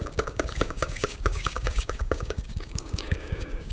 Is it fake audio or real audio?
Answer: fake